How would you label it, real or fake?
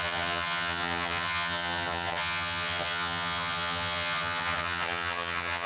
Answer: fake